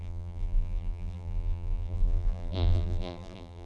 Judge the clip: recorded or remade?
remade